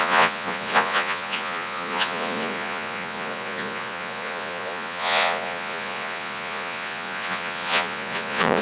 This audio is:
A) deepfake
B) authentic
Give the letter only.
A